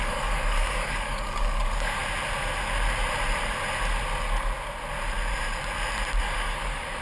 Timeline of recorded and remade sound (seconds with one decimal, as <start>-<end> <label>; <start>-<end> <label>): 0.0-2.0 remade; 2.0-6.2 recorded; 6.2-7.0 remade